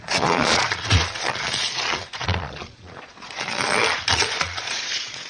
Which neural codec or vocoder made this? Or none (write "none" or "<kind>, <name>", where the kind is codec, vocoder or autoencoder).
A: vocoder, Vocos